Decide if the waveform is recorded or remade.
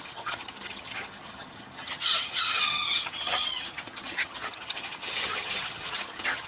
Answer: remade